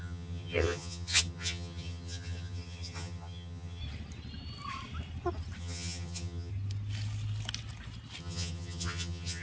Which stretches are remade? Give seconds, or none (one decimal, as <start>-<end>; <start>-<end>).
0.0-3.8; 5.6-6.5; 8.2-9.4